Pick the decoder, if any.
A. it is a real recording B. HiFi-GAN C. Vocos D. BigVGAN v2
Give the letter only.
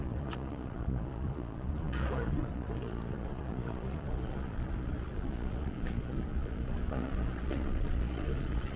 C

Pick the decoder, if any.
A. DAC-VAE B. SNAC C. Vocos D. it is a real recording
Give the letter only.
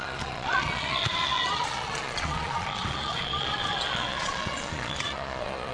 C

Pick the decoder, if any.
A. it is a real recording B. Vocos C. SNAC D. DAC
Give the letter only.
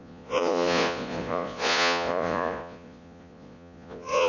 B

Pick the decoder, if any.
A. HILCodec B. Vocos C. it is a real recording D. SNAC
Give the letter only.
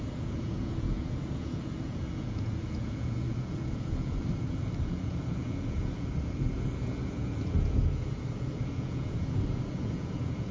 B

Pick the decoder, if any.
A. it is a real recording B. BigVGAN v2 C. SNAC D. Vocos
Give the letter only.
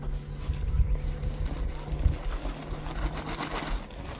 A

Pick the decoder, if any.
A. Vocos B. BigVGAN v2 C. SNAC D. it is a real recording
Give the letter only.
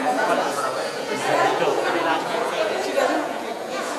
A